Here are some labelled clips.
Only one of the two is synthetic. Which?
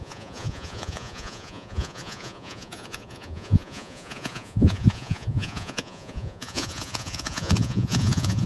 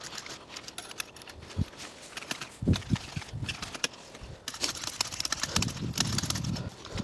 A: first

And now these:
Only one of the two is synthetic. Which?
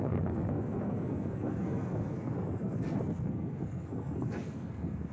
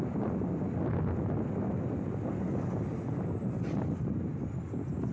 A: first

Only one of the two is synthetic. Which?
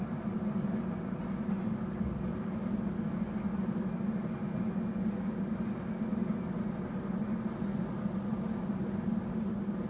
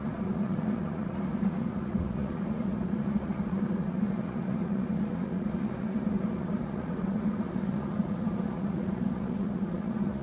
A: second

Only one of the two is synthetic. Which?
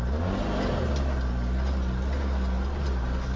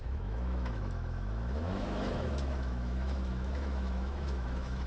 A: second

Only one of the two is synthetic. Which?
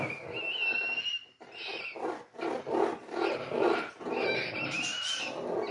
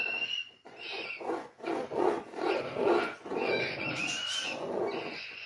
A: second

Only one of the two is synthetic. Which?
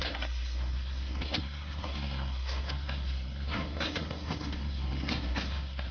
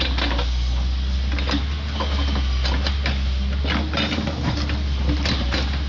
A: first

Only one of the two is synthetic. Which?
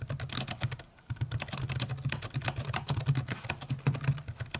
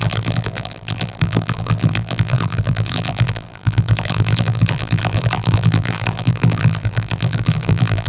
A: second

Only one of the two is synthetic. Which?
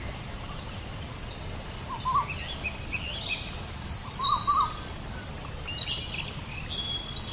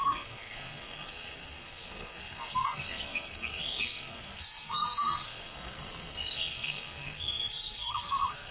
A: second